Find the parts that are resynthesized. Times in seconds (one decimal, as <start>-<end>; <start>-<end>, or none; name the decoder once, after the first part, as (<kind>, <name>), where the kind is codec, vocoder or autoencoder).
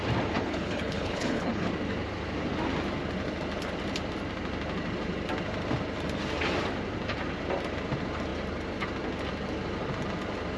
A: 0.4-1.7 (codec, HILCodec)